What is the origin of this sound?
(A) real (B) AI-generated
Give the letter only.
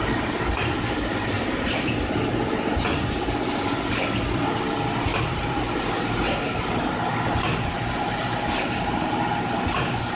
B